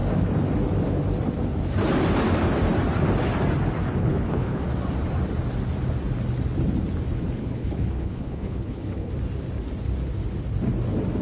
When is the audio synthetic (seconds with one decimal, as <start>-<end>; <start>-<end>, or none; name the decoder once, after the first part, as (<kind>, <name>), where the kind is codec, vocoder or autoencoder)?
4.0-4.6 (codec, HILCodec); 7.4-9.1